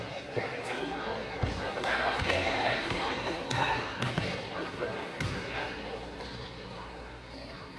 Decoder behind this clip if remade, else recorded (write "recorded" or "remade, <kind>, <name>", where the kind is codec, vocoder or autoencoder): remade, codec, SNAC